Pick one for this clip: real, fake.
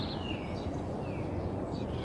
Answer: fake